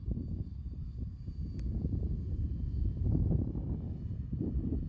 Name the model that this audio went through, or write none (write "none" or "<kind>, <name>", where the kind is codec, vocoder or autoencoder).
vocoder, BigVGAN v2